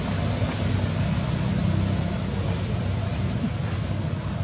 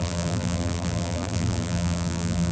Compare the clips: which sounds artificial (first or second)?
second